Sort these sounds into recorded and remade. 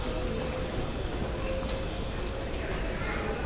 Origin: recorded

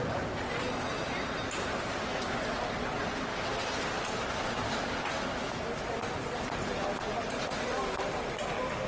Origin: recorded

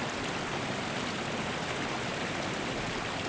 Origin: recorded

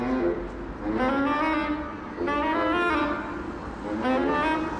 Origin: recorded